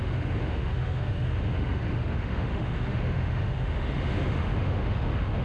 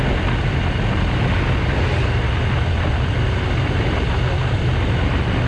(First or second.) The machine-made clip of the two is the first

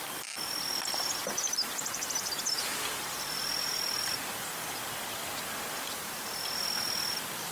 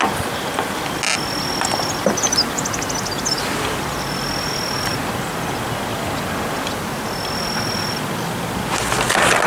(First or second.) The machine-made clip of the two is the first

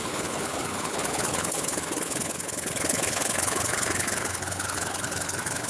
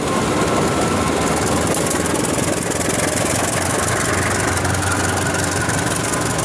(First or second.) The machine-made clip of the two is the first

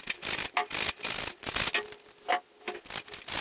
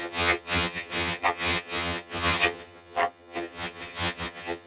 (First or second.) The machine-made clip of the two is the second